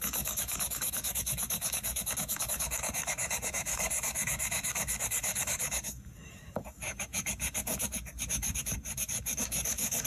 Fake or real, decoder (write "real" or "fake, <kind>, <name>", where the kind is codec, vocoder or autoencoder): fake, codec, DAC